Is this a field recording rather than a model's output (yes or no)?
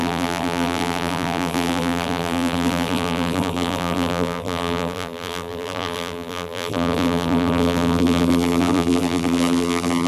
no